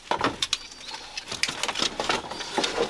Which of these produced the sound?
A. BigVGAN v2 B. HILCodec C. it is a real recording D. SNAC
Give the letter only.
C